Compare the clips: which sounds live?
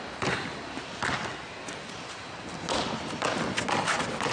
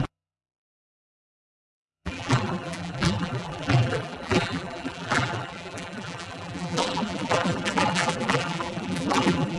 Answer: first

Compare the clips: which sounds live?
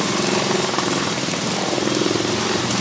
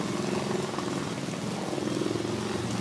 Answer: second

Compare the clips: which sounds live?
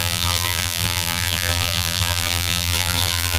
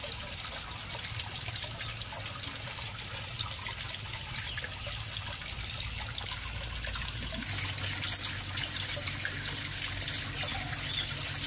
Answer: second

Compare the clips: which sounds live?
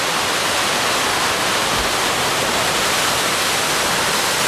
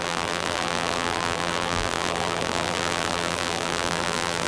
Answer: first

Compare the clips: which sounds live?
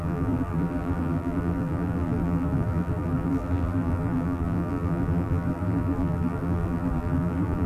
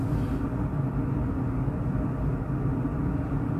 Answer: second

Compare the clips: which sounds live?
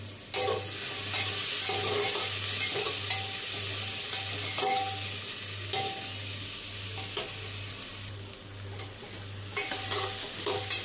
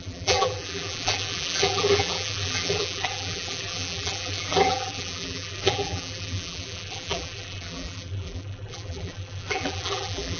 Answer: first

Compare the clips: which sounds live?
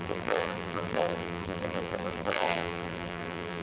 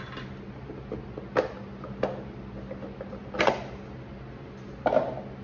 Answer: second